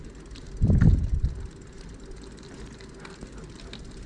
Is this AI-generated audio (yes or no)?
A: no